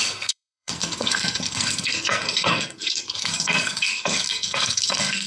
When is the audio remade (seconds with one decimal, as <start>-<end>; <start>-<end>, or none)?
0.0-5.3